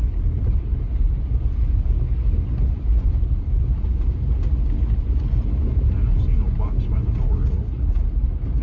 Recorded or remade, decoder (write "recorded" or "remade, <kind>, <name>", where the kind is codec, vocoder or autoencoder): recorded